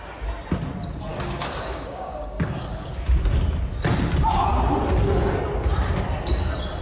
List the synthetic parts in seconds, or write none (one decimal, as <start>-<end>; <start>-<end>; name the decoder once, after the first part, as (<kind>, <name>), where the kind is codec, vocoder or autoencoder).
1.1-2.9 (codec, DAC)